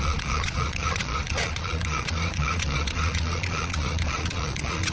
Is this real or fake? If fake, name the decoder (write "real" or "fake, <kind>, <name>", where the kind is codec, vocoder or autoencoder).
fake, vocoder, Vocos